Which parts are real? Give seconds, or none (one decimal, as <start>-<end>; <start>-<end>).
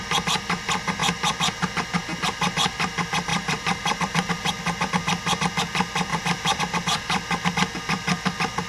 0.0-3.3; 4.5-6.1; 6.6-8.7